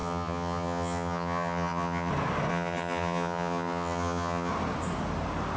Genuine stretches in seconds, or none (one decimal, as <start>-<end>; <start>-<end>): 2.1-2.5; 4.5-5.6